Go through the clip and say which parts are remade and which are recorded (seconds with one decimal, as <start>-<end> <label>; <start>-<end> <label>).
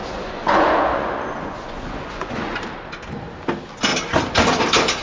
0.0-2.6 remade; 2.6-5.0 recorded